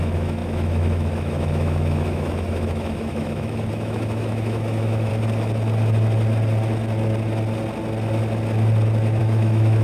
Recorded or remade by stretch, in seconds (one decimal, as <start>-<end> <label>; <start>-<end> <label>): 0.0-5.1 remade; 5.1-9.2 recorded; 9.2-9.8 remade